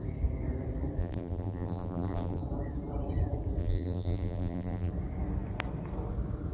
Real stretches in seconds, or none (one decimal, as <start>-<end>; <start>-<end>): 0.0-1.0; 2.4-3.6; 4.9-6.5